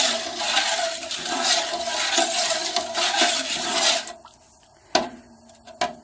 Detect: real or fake real